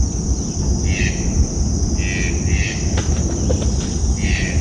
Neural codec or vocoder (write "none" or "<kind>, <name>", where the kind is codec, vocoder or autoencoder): none